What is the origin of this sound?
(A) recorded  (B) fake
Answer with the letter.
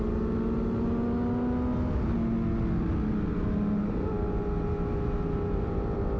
A